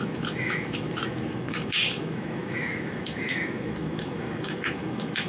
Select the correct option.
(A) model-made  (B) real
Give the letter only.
A